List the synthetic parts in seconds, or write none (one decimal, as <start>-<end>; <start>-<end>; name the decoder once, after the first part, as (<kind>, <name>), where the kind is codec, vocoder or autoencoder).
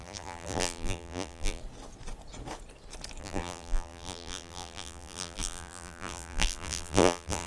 0.0-1.6 (vocoder, BigVGAN v2); 3.2-7.5